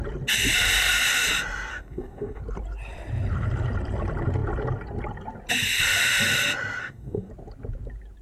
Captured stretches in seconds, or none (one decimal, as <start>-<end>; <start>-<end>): 0.0-1.7; 2.4-6.8; 7.3-8.2